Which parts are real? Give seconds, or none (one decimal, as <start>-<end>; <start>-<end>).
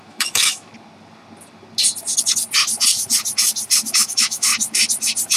0.7-3.9; 4.5-5.4